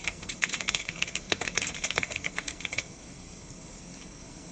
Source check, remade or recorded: remade